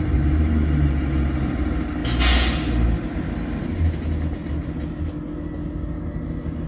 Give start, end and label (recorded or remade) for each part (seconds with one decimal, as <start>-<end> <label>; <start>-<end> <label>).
0.0-6.7 recorded